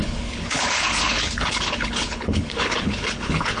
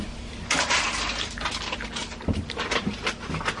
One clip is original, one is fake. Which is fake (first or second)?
first